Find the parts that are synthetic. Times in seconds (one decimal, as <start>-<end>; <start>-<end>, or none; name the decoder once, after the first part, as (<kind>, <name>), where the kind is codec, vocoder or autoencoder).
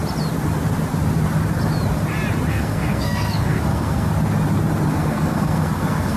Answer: 2.5-4.1 (codec, SNAC); 4.9-6.2